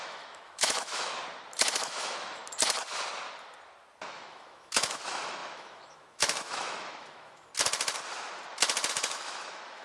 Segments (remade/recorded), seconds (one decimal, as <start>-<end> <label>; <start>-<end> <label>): 0.0-1.2 remade; 1.2-1.8 recorded; 1.8-2.4 remade; 2.4-4.1 recorded; 4.1-7.5 remade; 7.5-8.9 recorded; 8.9-9.8 remade